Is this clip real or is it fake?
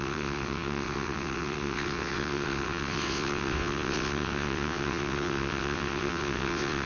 fake